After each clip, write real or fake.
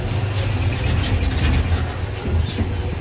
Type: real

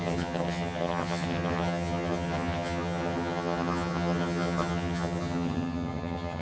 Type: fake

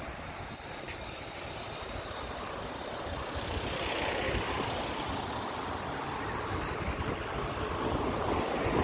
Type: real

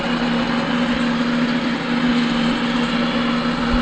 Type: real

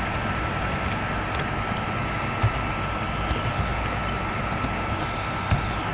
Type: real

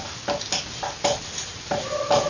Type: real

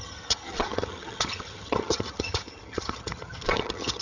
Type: fake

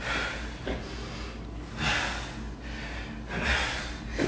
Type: real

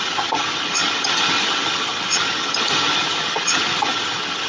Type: fake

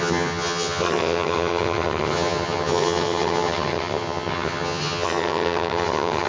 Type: fake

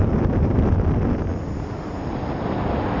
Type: real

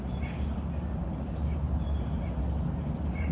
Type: real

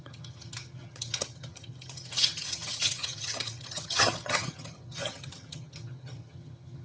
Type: fake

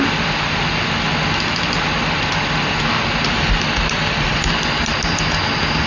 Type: real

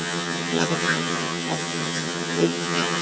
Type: fake